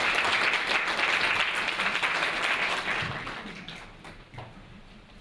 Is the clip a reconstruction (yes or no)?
no